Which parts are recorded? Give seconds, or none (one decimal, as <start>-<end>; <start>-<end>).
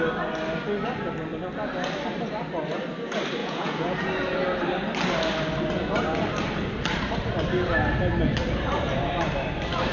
0.0-3.4; 4.1-9.9